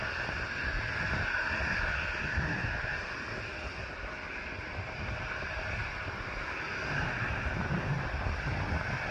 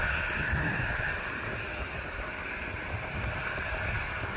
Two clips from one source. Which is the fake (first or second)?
second